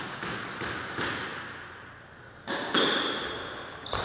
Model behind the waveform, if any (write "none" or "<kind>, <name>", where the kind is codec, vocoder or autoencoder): none